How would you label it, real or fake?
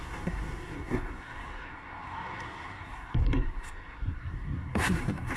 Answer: fake